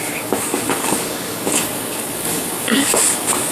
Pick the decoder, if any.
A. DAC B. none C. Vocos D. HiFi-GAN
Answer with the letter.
A